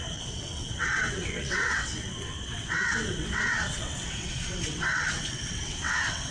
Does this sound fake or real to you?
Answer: fake